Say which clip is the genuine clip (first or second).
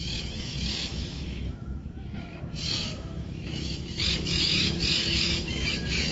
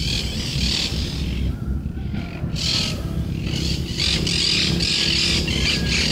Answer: second